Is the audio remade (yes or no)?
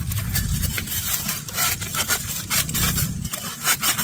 yes